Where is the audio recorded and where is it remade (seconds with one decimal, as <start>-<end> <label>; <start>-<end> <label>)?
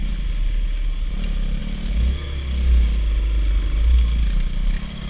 0.0-5.1 recorded